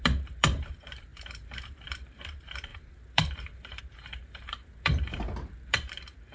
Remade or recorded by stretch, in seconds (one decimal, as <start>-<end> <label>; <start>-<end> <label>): 0.0-6.3 remade